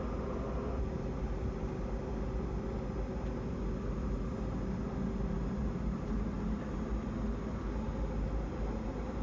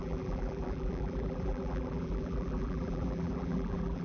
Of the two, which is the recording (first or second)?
first